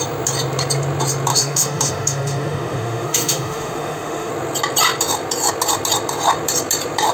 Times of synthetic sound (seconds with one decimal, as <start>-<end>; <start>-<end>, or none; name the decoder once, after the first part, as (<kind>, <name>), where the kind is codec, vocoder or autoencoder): 1.3-4.3 (autoencoder, DAC-VAE)